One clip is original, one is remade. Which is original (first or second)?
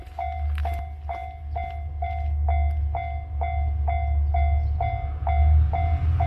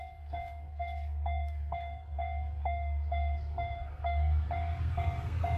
first